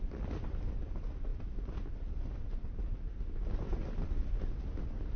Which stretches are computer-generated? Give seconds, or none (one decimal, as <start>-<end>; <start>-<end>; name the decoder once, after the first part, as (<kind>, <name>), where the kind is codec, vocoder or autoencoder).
none

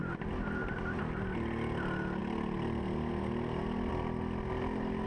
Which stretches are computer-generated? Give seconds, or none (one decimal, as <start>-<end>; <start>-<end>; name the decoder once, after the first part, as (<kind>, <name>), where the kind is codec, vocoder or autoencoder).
none